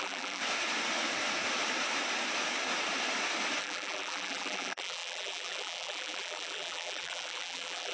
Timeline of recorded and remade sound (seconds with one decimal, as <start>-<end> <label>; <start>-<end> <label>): 0.0-0.4 remade; 0.4-3.6 recorded; 3.6-7.9 remade